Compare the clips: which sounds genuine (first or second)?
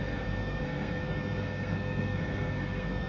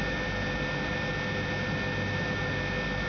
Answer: second